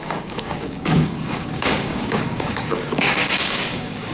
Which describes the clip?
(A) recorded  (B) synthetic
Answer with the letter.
B